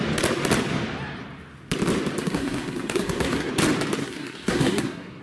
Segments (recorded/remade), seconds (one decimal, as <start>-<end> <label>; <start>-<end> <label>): 0.0-2.2 recorded; 2.2-3.5 remade; 3.5-4.0 recorded; 4.0-5.2 remade